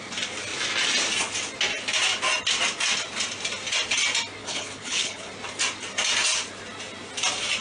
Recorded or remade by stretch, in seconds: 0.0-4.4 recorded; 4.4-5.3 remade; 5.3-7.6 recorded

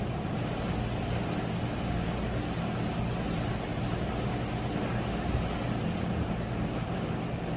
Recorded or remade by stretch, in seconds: 0.0-3.7 recorded; 3.7-4.3 remade; 4.3-7.6 recorded

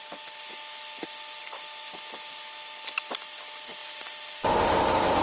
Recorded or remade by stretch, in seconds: 0.0-5.2 recorded

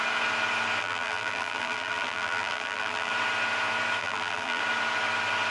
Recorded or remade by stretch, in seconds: 0.0-0.8 recorded; 0.8-3.1 remade; 3.1-4.0 recorded; 4.0-4.6 remade; 4.6-5.5 recorded

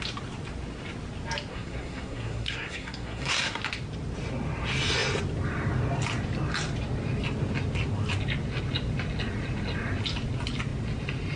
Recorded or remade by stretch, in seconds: 0.0-1.5 recorded; 1.5-3.6 remade; 3.6-11.4 recorded

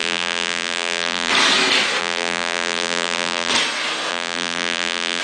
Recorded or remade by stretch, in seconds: 0.0-1.3 remade; 1.3-2.0 recorded; 2.0-3.5 remade; 3.5-4.1 recorded; 4.1-5.2 remade

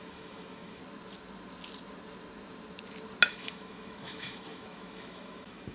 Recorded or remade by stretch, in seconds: 0.0-0.8 remade; 0.8-3.3 recorded; 3.3-5.7 remade